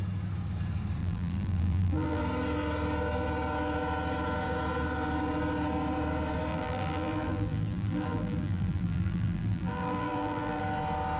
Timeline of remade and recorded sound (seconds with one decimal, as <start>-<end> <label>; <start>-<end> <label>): 0.0-1.0 recorded; 1.0-2.2 remade; 2.2-6.5 recorded; 6.5-10.6 remade; 10.6-11.2 recorded